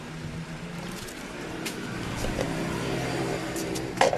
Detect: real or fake fake